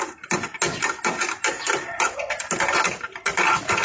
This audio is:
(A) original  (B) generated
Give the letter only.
A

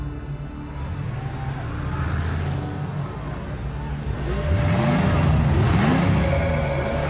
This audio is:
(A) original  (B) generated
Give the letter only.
A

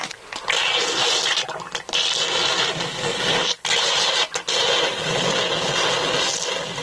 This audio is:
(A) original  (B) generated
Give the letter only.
A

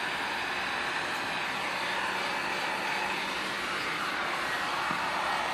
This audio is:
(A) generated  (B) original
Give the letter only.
B